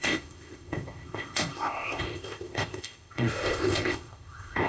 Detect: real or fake fake